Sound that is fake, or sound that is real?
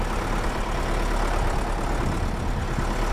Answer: real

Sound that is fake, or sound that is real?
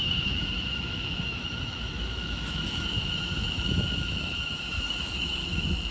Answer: fake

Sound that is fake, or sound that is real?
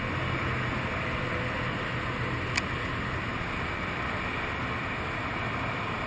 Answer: real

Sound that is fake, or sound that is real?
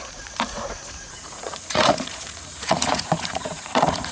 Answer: fake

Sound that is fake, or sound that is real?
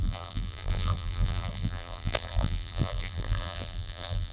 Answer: fake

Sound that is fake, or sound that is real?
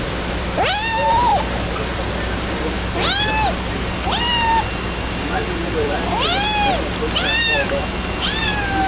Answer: real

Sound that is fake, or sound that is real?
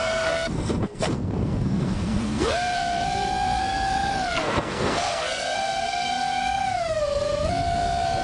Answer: fake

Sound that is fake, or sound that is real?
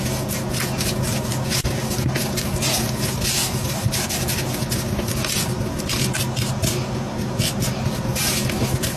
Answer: real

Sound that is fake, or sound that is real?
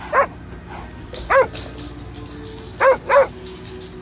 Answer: real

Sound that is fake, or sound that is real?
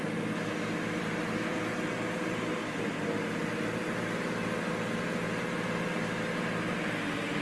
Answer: real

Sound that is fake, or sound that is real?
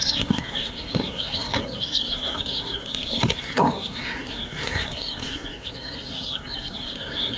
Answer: fake